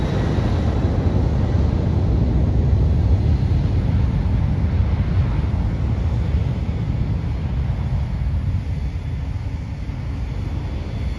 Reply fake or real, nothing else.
real